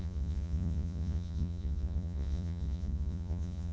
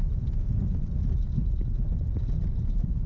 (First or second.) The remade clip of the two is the first